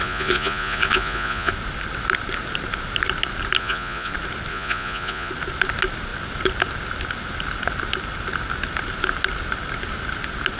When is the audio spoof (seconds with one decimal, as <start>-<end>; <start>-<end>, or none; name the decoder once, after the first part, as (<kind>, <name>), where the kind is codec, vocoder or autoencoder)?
0.0-1.5 (vocoder, Vocos); 3.6-4.1; 4.5-5.3